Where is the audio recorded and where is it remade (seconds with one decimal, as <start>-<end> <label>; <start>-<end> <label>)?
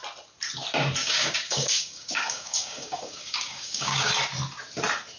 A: 0.0-1.0 recorded; 1.0-4.1 remade; 4.1-5.2 recorded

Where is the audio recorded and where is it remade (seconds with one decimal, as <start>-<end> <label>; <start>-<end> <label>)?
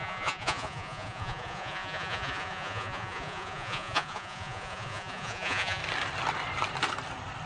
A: 0.0-5.8 remade; 5.8-7.5 recorded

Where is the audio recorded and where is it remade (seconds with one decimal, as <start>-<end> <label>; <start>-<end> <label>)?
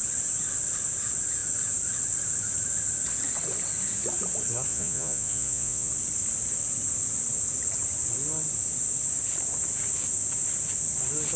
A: 0.0-4.7 recorded; 4.7-5.9 remade; 5.9-11.4 recorded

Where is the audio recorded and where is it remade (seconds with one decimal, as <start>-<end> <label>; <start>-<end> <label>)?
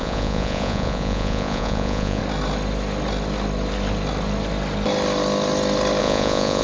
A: 0.0-2.2 remade; 2.2-6.0 recorded; 6.0-6.6 remade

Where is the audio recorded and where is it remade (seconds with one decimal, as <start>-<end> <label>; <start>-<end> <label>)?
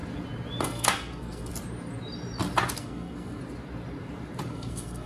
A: 0.0-0.6 recorded; 0.6-1.5 remade; 1.5-2.8 recorded; 2.8-3.4 remade; 3.4-4.5 recorded; 4.5-5.1 remade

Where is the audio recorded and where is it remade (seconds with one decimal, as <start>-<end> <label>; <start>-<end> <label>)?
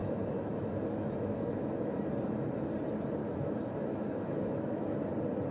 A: 0.0-2.1 remade; 2.1-3.2 recorded; 3.2-5.1 remade; 5.1-5.5 recorded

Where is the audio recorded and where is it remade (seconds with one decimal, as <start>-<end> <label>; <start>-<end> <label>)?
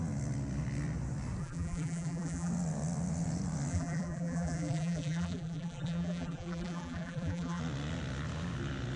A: 0.0-1.4 recorded; 1.4-2.5 remade; 2.5-3.7 recorded; 3.7-7.6 remade; 7.6-9.0 recorded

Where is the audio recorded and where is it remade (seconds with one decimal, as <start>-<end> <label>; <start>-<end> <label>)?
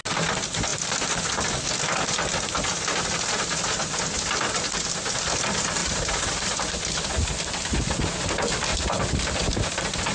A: 0.0-5.8 recorded; 5.8-7.1 remade; 7.1-8.7 recorded; 8.7-9.3 remade; 9.3-10.1 recorded